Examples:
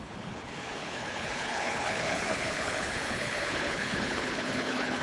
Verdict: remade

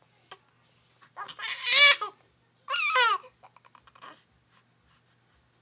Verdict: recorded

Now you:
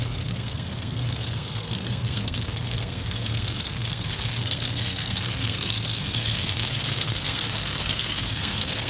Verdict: remade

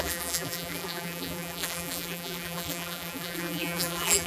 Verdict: remade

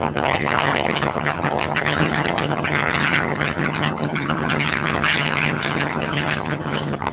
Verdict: remade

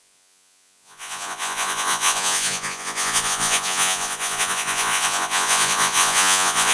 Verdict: remade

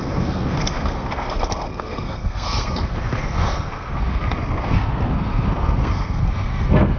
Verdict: remade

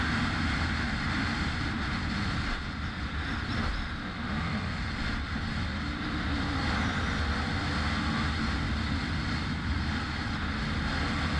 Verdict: recorded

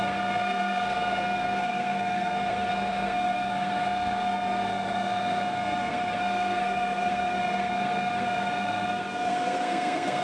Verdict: remade